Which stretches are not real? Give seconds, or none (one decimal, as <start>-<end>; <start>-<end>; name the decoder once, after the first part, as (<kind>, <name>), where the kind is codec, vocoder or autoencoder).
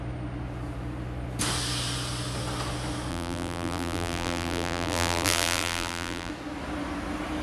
3.1-6.3 (vocoder, BigVGAN v2)